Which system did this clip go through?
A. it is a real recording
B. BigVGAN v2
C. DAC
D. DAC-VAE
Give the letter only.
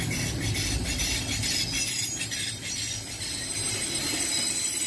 A